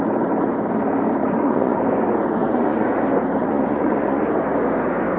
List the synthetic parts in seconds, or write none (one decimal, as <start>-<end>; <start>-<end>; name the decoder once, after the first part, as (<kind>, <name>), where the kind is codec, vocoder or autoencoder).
1.2-1.8 (vocoder, Vocos); 2.4-3.0; 3.4-4.2